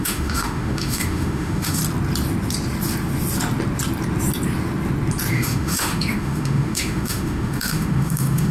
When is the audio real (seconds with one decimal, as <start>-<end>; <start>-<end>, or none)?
1.8-5.3